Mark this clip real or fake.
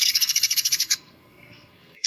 fake